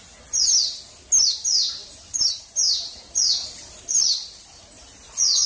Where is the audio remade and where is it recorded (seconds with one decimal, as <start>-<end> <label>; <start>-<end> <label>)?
0.0-1.8 recorded; 1.8-5.1 remade; 5.1-5.5 recorded